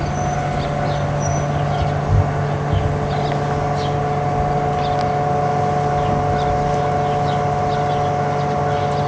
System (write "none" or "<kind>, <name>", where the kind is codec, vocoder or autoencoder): none